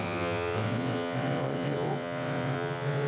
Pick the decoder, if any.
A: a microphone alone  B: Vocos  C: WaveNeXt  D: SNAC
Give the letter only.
C